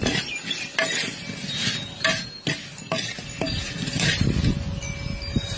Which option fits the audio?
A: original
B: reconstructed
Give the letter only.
A